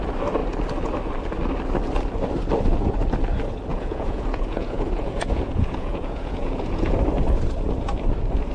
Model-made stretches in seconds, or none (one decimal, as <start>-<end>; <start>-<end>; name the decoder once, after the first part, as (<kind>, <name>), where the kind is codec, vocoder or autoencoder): 3.7-6.9 (vocoder, Vocos)